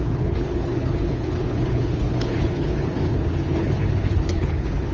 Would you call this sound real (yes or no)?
no